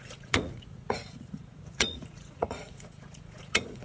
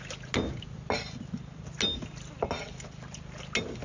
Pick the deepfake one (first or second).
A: first